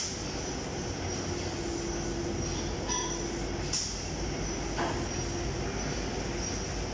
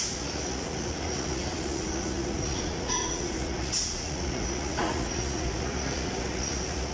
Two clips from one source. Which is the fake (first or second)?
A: second